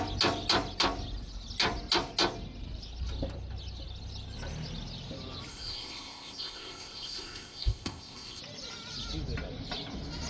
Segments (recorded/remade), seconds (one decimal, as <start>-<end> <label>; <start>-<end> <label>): 0.0-5.5 recorded; 5.5-8.4 remade; 8.4-10.3 recorded